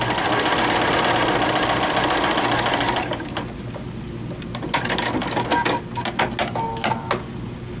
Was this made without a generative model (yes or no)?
yes